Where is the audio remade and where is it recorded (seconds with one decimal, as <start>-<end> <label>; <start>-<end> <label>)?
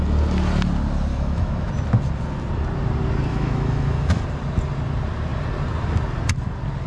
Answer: 0.0-1.1 recorded; 1.1-1.7 remade; 1.7-3.3 recorded; 3.3-4.2 remade; 4.2-6.9 recorded